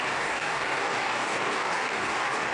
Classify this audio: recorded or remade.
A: remade